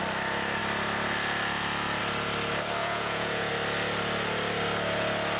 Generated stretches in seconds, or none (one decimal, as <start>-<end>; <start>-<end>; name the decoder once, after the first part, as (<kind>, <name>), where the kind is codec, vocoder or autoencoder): 2.8-3.5 (vocoder, Vocos)